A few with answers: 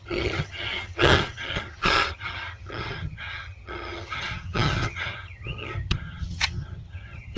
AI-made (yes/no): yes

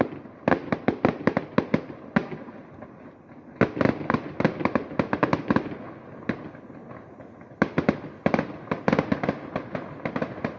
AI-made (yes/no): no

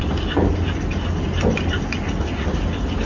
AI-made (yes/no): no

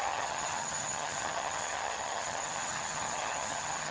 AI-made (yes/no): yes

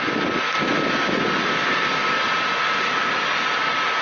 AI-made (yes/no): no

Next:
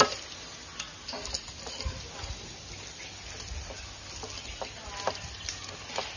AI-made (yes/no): no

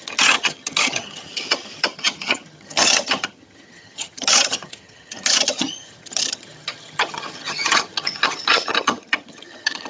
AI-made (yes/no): yes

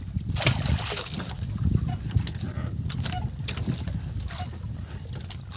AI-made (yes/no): no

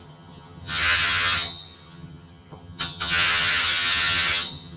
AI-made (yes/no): yes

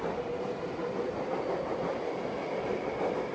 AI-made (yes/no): no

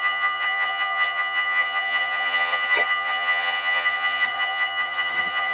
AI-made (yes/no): yes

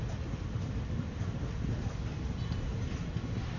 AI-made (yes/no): no